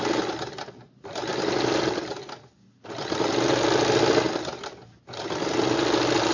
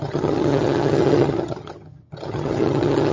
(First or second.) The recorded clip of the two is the first